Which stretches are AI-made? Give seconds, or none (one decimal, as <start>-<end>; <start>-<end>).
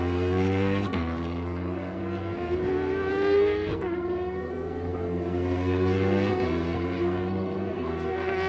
0.0-2.0; 3.1-8.5